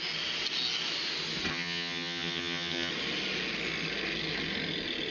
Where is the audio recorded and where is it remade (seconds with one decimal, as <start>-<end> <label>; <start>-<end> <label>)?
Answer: 0.0-1.5 recorded; 1.5-2.9 remade; 2.9-5.1 recorded